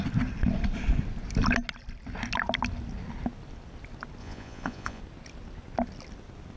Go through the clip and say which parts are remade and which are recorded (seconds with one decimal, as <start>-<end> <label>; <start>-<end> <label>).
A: 0.0-4.2 recorded; 4.2-5.0 remade; 5.0-6.6 recorded